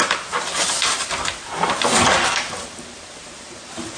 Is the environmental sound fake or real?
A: real